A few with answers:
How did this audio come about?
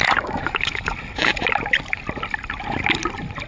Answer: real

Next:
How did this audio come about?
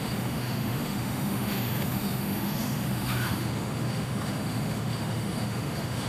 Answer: fake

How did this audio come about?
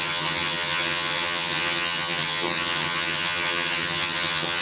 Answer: fake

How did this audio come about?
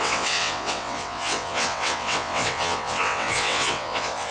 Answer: fake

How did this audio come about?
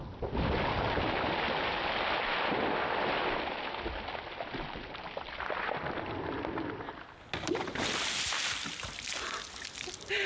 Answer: real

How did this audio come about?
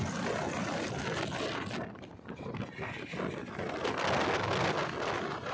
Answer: real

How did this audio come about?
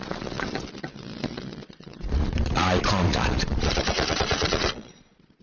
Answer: fake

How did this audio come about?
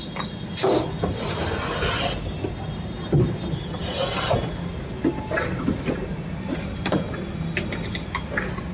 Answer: real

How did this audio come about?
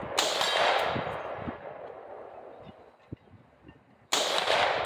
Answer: real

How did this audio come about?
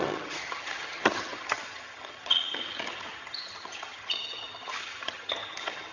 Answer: fake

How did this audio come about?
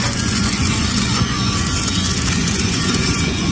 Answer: fake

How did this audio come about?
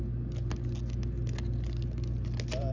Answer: real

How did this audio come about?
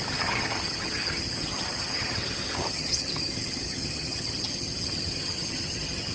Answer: fake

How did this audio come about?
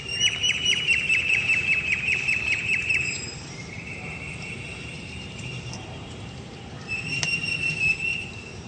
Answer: fake